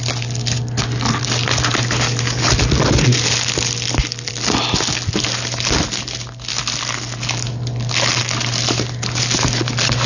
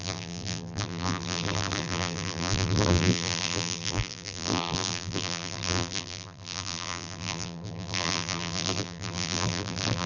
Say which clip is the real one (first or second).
first